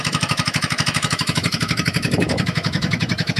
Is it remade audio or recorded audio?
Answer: remade